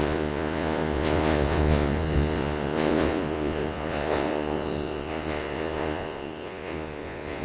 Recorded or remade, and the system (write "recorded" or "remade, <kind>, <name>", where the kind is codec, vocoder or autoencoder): remade, vocoder, Vocos